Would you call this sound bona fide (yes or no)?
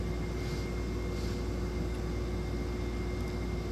yes